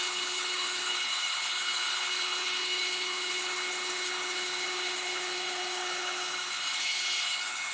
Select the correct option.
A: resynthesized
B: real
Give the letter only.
A